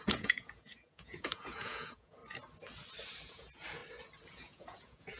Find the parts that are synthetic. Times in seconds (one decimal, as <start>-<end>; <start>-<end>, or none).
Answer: 0.0-2.2; 3.3-3.8; 4.3-5.2